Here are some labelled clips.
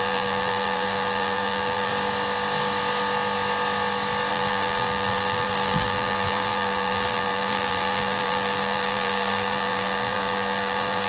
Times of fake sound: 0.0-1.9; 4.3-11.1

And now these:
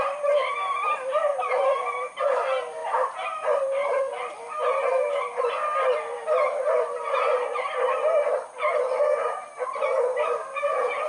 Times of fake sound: 2.8-4.0; 4.6-5.4